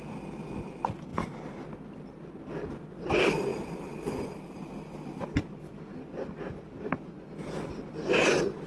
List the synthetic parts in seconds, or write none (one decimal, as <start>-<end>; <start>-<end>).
none